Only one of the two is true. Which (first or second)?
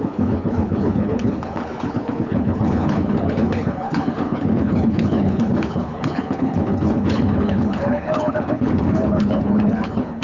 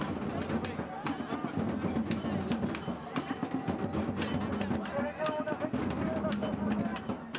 second